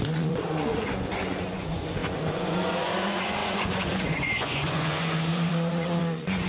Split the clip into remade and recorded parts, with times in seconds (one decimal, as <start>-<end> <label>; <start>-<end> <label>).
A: 0.0-6.5 remade